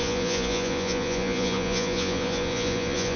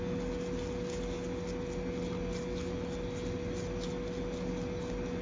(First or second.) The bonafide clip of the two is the second